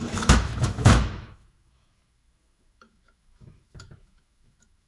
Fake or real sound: fake